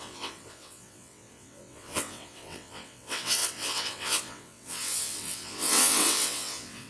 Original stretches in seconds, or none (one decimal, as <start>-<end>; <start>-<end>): none